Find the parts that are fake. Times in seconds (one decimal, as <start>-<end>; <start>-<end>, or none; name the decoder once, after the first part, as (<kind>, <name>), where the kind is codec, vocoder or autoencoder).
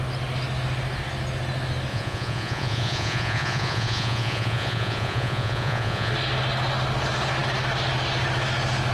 1.9-6.1 (vocoder, Vocos)